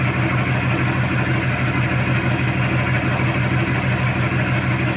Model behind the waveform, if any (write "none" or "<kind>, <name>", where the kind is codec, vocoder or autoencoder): none